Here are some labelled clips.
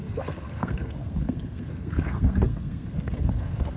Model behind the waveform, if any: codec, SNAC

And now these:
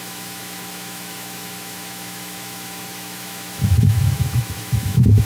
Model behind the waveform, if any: autoencoder, DAC-VAE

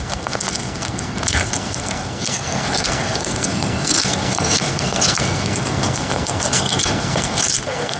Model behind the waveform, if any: codec, SNAC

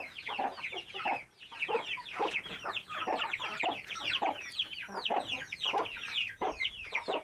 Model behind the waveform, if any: vocoder, Vocos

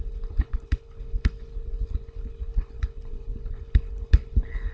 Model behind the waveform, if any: codec, HILCodec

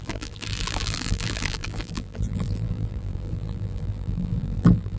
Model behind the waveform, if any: vocoder, BigVGAN v2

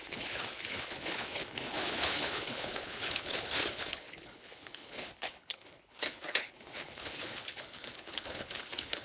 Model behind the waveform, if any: codec, HILCodec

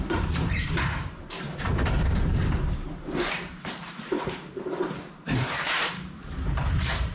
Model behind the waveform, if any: vocoder, BigVGAN v2